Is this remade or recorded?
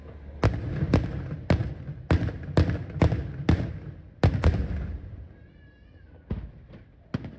recorded